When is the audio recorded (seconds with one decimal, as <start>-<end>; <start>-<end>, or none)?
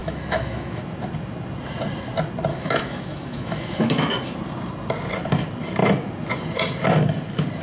0.8-2.5; 4.1-7.6